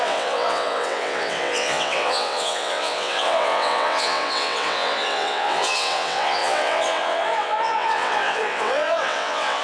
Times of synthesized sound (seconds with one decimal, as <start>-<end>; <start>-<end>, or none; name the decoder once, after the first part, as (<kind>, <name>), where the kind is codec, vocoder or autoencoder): 0.0-9.6 (vocoder, WaveNeXt)